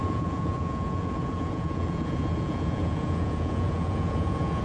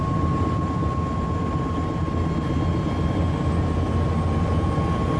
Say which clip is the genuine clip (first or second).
second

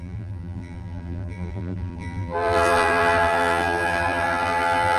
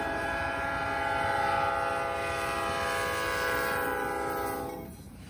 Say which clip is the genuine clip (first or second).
second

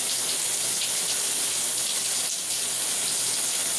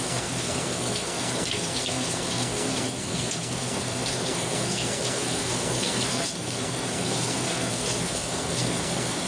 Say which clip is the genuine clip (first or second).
first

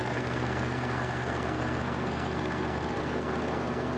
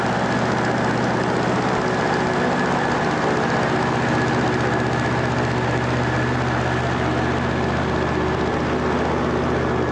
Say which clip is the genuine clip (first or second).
second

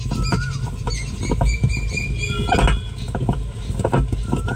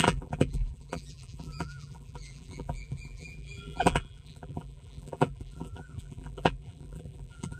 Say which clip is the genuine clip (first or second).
first